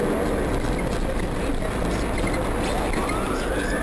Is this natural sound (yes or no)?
yes